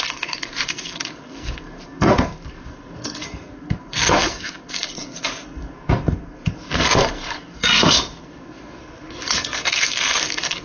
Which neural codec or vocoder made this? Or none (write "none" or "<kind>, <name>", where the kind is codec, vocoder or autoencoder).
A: codec, SNAC